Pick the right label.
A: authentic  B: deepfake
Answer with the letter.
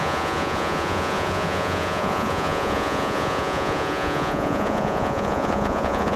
B